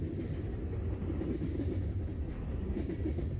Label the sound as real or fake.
real